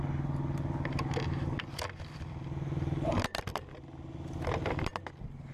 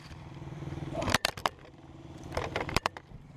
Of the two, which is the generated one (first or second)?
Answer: second